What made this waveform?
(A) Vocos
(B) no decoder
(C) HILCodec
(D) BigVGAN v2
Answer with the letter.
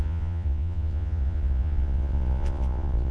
A